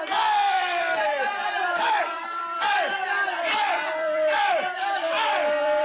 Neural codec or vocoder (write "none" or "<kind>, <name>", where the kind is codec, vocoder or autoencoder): vocoder, BigVGAN v2